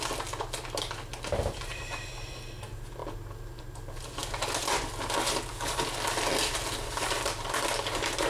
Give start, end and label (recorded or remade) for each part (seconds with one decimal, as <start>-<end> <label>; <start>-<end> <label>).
0.0-8.3 recorded